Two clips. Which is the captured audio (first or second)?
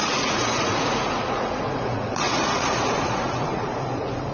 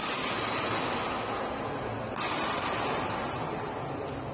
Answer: second